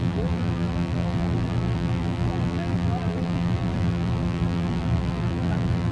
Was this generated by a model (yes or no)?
yes